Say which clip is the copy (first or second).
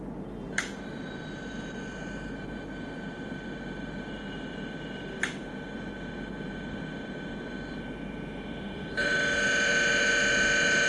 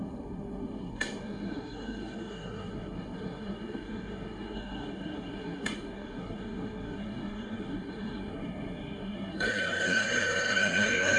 second